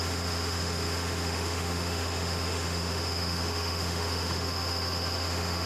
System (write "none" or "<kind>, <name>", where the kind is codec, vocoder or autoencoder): autoencoder, DAC-VAE